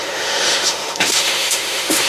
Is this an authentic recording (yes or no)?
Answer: no